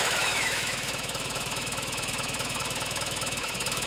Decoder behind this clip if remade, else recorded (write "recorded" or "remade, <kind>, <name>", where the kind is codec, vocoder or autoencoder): remade, autoencoder, DAC-VAE